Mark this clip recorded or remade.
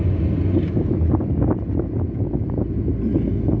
recorded